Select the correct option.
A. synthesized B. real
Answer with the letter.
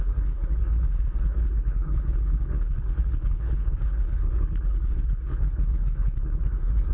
A